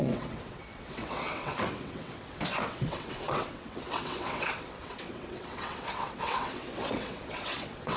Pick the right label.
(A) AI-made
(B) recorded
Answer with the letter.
A